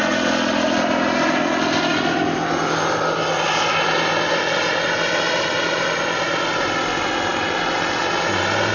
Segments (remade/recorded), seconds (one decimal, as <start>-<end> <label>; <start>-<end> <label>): 0.0-7.3 recorded; 7.3-8.0 remade; 8.0-8.7 recorded